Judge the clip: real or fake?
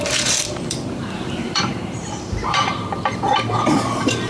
fake